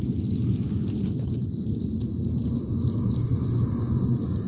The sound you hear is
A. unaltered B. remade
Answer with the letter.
A